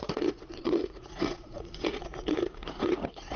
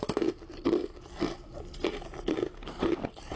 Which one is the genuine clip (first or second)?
second